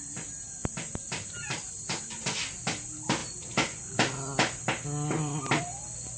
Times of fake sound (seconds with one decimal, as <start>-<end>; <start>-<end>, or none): none